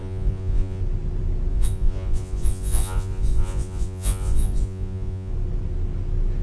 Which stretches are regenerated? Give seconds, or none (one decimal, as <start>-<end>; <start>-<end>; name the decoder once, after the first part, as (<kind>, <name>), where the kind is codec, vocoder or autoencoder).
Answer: 0.0-0.8 (vocoder, Vocos); 1.5-5.3